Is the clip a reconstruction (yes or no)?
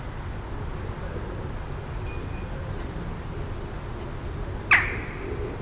no